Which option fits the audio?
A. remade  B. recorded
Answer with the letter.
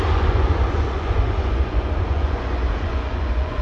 A